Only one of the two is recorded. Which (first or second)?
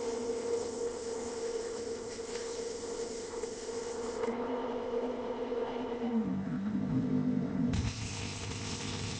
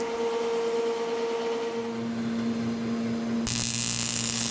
second